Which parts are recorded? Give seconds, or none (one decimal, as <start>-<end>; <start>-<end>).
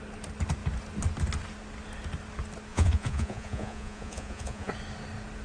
0.0-2.7; 4.7-5.4